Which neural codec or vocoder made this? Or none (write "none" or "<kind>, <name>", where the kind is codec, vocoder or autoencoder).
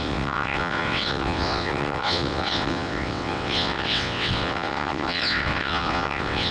vocoder, WaveNeXt